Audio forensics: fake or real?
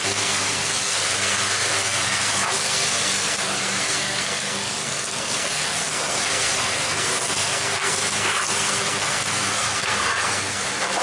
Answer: fake